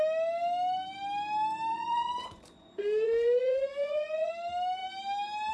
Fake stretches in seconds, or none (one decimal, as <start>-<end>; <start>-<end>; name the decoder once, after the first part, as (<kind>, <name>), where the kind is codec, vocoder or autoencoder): 1.7-4.3 (vocoder, Vocos)